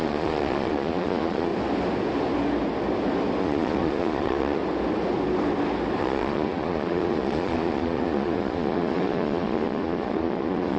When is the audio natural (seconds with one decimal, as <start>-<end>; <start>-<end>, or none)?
1.5-3.4; 4.6-6.0